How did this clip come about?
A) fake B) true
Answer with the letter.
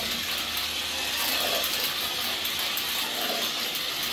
B